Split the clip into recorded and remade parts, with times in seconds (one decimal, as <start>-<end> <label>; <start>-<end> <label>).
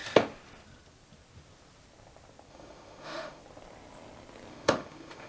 0.0-2.5 recorded; 2.5-3.4 remade; 3.4-4.5 recorded; 4.5-5.3 remade